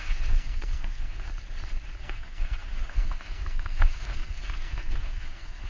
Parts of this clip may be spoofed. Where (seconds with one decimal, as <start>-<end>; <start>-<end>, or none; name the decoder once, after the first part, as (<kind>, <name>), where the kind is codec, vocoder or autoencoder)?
0.0-1.3 (codec, SNAC); 2.0-5.7